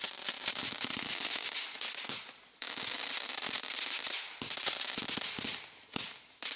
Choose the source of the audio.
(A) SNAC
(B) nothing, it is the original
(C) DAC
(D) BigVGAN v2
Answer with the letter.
B